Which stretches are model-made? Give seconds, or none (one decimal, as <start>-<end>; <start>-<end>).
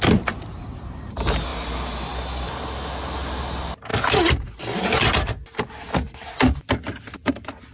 none